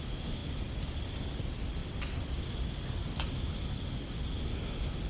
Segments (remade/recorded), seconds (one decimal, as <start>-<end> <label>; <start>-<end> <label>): 0.0-5.1 recorded